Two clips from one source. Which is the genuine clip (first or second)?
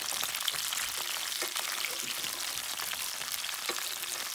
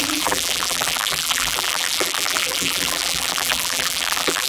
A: first